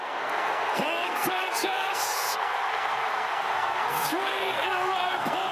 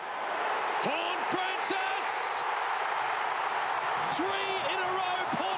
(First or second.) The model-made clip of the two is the first